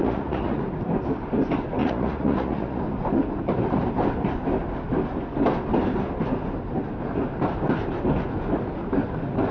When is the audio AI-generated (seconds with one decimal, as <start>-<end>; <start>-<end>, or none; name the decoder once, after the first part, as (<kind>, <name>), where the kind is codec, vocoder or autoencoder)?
0.0-0.6 (vocoder, Vocos); 1.8-2.8